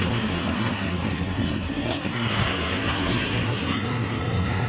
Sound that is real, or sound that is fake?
fake